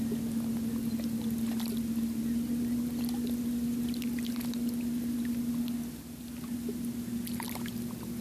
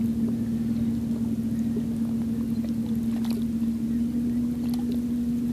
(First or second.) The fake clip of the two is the first